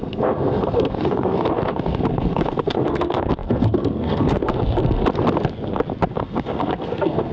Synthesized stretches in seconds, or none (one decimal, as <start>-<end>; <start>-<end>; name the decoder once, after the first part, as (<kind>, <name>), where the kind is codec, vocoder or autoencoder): 0.0-5.0 (codec, SNAC); 6.1-7.3